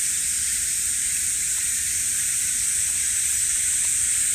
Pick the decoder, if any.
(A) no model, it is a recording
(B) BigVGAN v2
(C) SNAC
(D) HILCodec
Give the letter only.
A